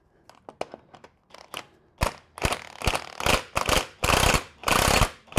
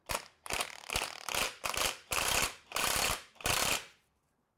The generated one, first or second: second